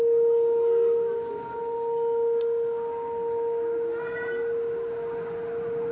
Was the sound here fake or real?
real